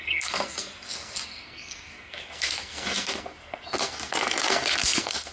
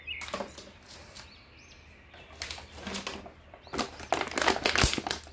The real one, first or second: second